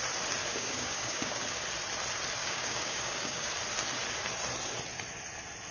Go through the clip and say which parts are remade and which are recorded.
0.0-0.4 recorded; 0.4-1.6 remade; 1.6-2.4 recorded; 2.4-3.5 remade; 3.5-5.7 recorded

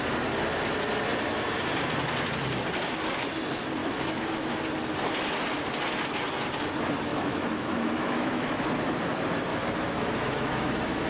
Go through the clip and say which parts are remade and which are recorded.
0.0-3.8 recorded; 3.8-4.6 remade; 4.6-7.1 recorded; 7.1-8.7 remade; 8.7-9.5 recorded; 9.5-11.1 remade

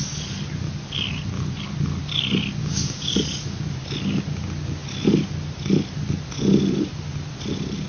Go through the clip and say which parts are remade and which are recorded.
0.0-2.6 recorded; 2.6-3.1 remade; 3.1-7.9 recorded

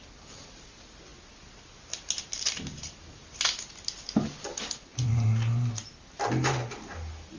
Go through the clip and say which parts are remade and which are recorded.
0.0-7.4 recorded

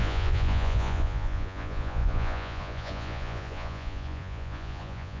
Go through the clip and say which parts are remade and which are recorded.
0.0-5.2 remade

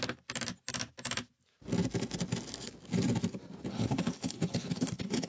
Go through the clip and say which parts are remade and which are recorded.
0.0-3.7 recorded; 3.7-5.3 remade

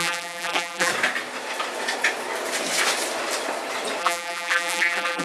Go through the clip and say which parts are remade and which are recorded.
0.0-0.9 remade; 0.9-4.0 recorded; 4.0-5.2 remade

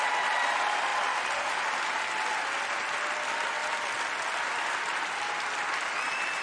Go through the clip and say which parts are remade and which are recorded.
0.0-6.4 recorded